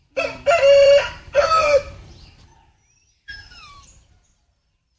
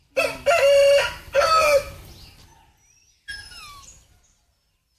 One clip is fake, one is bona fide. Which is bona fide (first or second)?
second